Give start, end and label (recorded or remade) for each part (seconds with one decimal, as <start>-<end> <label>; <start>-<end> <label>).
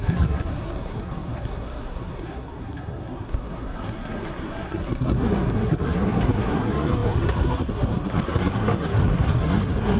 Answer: 0.0-10.0 remade